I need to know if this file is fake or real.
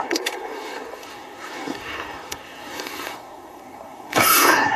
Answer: fake